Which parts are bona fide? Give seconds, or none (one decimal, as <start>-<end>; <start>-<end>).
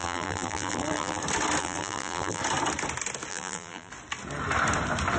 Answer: 1.2-1.6; 2.4-3.3; 3.9-5.2